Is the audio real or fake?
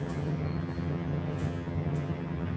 fake